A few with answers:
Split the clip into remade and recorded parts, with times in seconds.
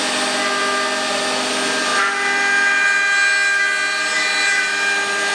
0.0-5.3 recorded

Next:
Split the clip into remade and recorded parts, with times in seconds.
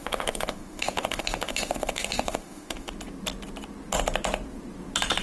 0.0-2.9 remade; 2.9-5.2 recorded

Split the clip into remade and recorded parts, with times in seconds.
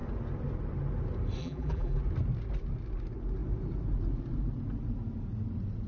0.0-1.4 recorded; 1.4-2.0 remade; 2.0-5.9 recorded